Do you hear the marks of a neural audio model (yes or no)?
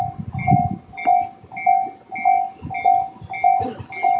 no